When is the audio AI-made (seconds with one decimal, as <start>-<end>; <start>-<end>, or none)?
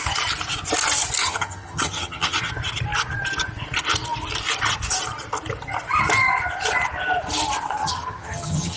1.2-2.5; 7.8-8.8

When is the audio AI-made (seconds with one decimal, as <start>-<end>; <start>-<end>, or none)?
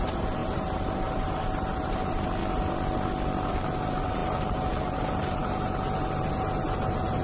0.0-2.4; 3.5-7.2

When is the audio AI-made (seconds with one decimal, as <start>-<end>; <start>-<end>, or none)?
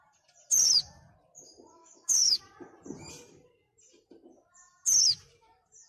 1.8-2.4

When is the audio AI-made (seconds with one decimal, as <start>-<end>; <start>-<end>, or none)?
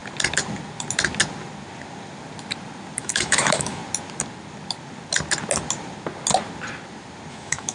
3.0-3.8; 7.3-7.7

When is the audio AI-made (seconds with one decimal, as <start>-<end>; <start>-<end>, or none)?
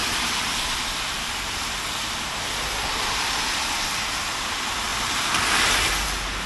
4.9-5.6